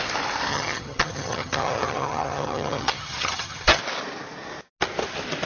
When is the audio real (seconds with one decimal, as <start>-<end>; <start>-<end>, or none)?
0.0-0.5; 3.8-5.5